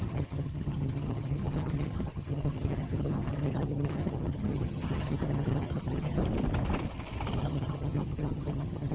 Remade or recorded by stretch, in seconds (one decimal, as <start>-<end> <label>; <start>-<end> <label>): 0.0-6.2 remade; 6.2-7.4 recorded; 7.4-8.9 remade